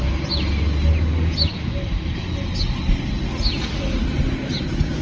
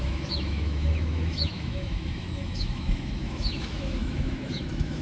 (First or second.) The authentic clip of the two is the first